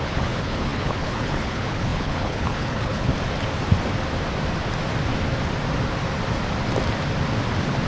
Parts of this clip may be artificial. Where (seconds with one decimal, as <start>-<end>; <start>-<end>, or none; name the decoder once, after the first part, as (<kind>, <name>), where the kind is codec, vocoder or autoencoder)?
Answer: 0.0-3.1 (codec, HILCodec)

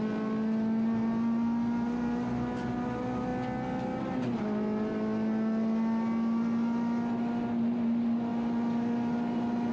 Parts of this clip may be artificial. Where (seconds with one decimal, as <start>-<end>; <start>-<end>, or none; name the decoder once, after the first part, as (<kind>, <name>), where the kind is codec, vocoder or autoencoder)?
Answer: none

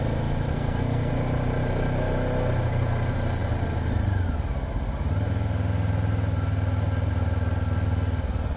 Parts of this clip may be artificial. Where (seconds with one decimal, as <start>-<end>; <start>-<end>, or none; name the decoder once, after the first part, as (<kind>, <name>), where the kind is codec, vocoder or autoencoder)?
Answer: 0.5-1.1 (codec, SNAC)

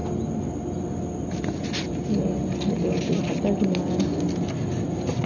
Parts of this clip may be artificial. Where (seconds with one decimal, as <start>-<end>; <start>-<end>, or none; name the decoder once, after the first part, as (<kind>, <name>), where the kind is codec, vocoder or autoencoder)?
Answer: none

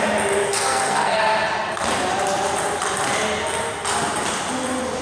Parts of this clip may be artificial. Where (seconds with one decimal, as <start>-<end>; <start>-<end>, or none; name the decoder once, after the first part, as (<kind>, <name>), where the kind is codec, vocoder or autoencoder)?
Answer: 0.4-1.2 (codec, SNAC)